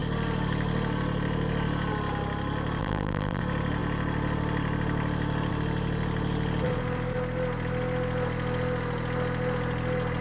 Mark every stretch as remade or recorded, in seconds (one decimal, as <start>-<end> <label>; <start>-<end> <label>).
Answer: 0.0-2.8 recorded; 2.8-3.4 remade; 3.4-10.2 recorded